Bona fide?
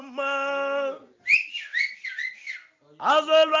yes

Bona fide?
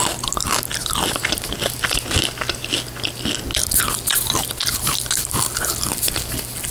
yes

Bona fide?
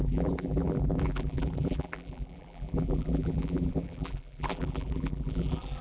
no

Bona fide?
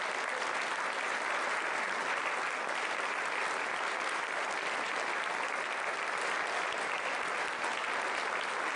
yes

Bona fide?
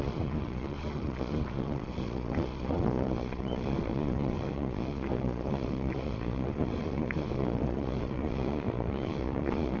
no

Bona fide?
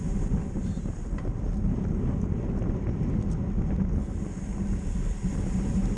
yes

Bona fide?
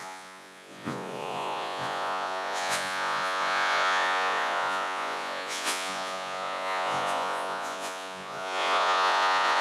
no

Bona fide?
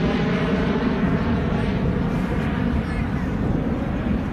yes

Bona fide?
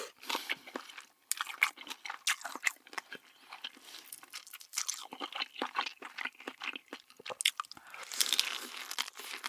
yes